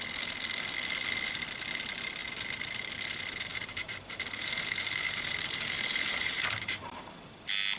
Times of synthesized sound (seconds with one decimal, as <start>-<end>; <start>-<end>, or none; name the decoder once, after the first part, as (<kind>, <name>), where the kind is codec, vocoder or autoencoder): 2.2-2.9 (vocoder, BigVGAN v2); 3.5-7.3